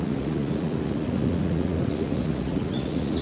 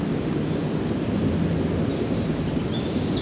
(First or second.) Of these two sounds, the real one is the second